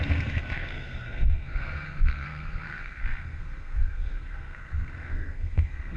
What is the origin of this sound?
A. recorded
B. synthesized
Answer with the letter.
B